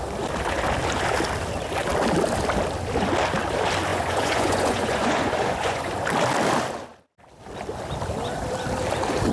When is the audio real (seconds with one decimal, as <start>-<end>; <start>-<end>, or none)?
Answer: 0.0-3.9; 5.9-9.3